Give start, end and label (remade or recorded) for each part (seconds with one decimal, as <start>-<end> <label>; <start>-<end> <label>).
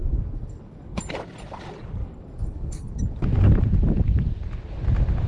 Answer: 0.0-1.0 remade; 1.0-2.0 recorded; 2.0-2.9 remade; 2.9-5.3 recorded